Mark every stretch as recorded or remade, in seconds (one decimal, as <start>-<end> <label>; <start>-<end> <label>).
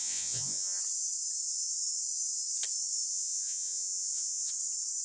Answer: 0.0-0.8 remade; 0.8-3.1 recorded; 3.1-4.5 remade; 4.5-5.0 recorded